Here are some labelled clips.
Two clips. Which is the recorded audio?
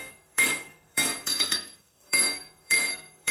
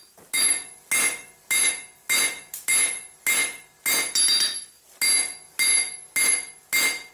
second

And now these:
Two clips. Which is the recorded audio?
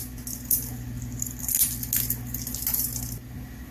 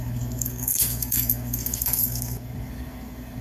first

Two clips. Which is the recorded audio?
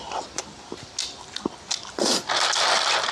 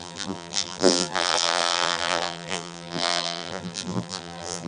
first